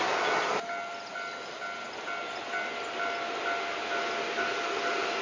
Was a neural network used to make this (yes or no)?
no